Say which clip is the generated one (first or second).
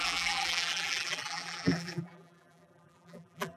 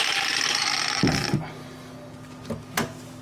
first